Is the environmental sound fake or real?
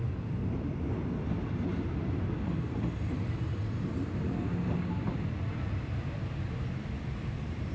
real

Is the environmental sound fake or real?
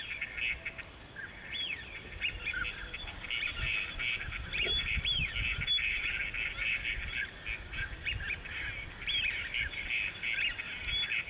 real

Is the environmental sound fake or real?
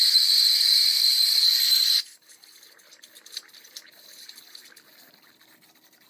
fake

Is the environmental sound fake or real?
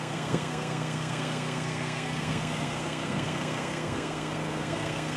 fake